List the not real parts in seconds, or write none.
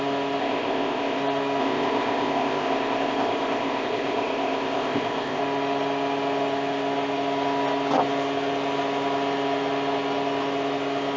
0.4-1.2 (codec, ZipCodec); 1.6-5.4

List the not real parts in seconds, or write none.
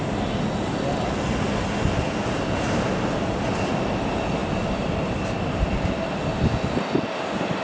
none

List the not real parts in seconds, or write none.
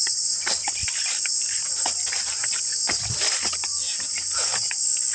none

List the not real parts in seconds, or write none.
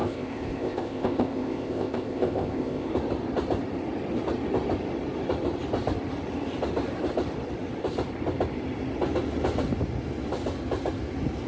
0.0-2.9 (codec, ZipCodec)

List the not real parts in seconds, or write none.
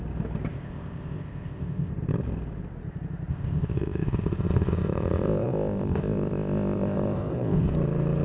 0.5-1.9 (codec, ZipCodec); 3.3-7.7